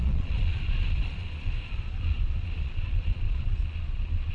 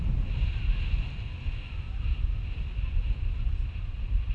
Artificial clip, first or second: first